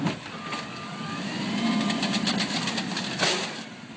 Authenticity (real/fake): real